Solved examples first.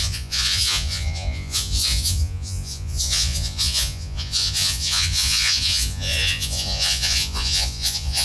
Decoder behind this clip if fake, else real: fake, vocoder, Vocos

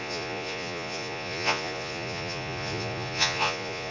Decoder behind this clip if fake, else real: fake, vocoder, Vocos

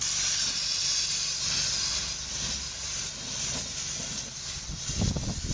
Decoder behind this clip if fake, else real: real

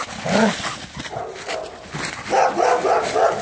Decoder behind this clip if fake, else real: real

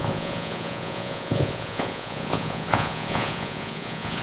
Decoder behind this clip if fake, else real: fake, vocoder, Vocos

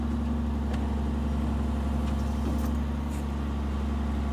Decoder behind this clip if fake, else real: real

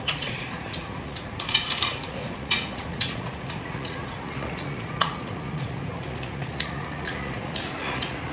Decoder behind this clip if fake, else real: fake, vocoder, Vocos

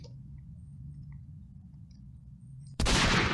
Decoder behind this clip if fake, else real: fake, vocoder, Vocos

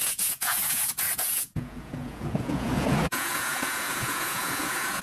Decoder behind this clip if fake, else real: fake, vocoder, Vocos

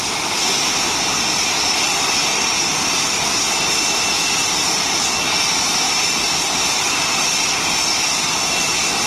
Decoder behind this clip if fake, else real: real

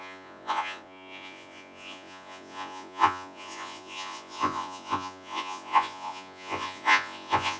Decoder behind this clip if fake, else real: fake, vocoder, Vocos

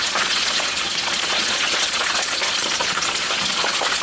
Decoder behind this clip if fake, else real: fake, vocoder, Vocos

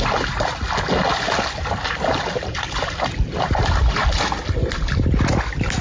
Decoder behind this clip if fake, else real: real